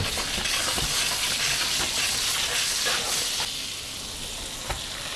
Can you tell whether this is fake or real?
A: real